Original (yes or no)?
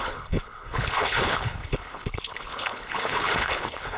no